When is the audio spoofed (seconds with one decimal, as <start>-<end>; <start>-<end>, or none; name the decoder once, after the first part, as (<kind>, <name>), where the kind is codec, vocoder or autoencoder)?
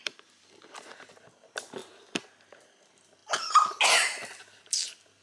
0.0-1.8 (vocoder, BigVGAN v2); 2.5-3.2; 4.4-5.2